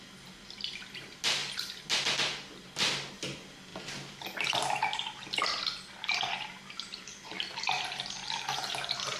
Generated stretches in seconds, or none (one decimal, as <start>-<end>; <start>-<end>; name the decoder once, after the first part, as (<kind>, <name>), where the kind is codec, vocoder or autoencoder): none